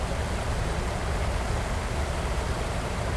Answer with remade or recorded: recorded